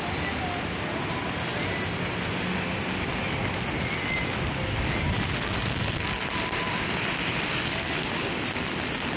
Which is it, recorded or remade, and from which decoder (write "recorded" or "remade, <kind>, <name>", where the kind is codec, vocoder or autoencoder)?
recorded